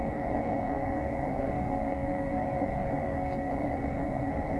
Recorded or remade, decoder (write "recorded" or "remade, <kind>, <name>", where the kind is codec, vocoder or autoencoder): remade, codec, SNAC